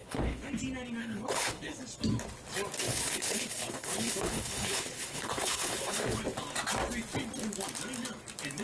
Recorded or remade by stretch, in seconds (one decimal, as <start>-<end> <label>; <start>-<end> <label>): 0.0-0.5 remade; 0.5-1.0 recorded; 1.0-1.8 remade; 1.8-2.8 recorded; 2.8-6.2 remade; 6.2-8.6 recorded